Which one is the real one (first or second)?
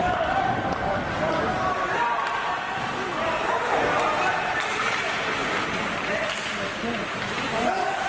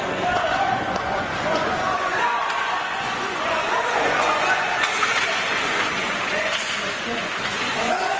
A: first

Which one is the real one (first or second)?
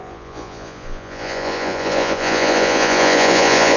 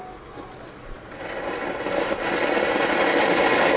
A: second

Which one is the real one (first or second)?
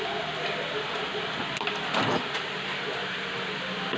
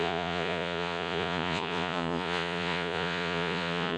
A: first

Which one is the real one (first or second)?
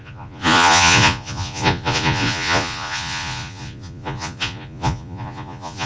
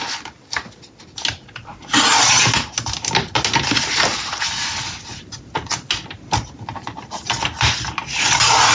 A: second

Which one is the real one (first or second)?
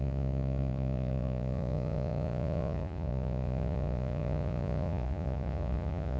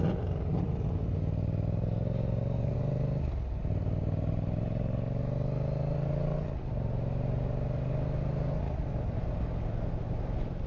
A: second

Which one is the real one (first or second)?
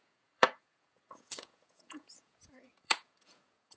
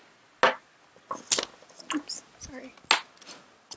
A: second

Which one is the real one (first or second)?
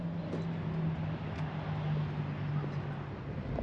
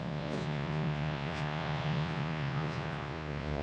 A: first